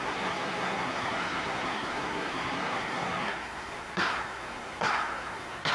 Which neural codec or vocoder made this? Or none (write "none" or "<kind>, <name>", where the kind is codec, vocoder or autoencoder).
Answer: codec, SNAC